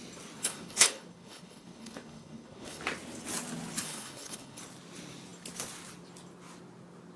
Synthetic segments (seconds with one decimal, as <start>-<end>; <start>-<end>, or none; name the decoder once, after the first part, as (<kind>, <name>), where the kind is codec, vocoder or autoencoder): 0.4-2.8 (codec, HILCodec); 3.8-4.6